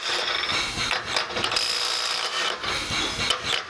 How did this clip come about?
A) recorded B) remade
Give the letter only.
A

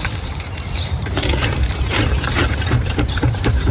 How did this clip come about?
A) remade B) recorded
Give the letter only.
A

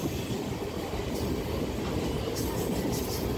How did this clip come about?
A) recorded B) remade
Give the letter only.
A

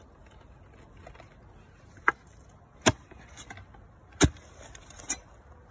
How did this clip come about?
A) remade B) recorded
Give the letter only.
B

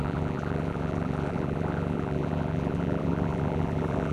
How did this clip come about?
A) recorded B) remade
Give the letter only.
B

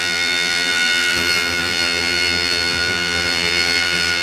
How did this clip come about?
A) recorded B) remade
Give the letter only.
B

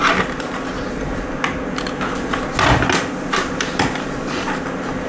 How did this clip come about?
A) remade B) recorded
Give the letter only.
B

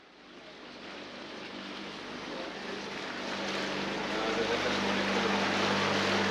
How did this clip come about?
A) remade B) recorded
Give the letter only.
B